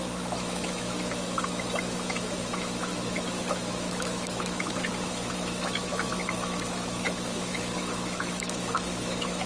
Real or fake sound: fake